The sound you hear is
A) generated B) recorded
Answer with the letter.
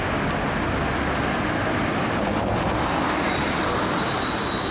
B